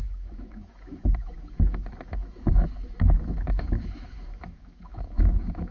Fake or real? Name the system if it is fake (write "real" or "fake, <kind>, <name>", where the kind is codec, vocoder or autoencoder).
fake, autoencoder, DAC-VAE